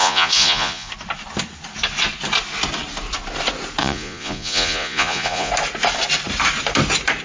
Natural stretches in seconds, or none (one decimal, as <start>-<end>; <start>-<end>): 0.9-3.8; 5.5-7.2